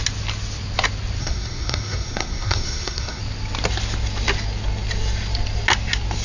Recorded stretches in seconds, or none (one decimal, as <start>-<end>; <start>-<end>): 0.0-1.2; 3.2-6.2

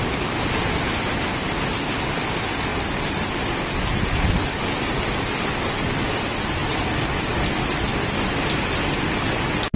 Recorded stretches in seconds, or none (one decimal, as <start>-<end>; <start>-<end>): 0.0-9.8

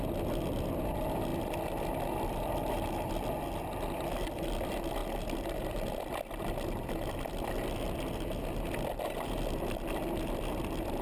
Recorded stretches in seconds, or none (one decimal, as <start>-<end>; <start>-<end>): 0.0-11.0

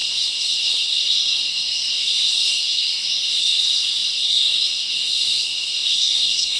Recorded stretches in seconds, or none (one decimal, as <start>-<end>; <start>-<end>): none

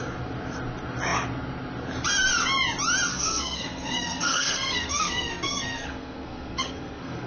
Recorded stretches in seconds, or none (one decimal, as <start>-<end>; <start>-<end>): 0.0-3.1

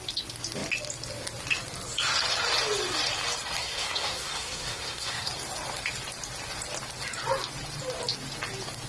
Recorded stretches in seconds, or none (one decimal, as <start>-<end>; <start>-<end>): 0.0-3.6; 5.3-8.9

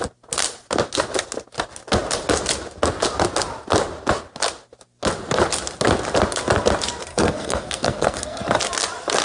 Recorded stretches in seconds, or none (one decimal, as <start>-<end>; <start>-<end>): 0.0-7.1; 8.4-9.2

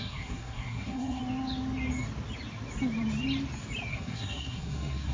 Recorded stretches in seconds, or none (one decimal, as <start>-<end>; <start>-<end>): 1.2-3.9